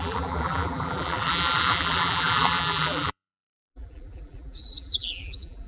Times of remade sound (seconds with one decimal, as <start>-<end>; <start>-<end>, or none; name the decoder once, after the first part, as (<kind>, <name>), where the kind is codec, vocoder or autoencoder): 0.0-5.7 (vocoder, BigVGAN v2)